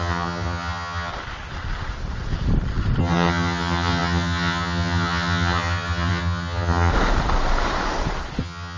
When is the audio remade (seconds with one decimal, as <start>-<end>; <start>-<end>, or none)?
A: 0.0-1.1; 3.0-6.9; 8.4-8.8